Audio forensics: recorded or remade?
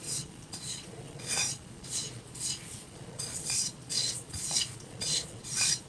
remade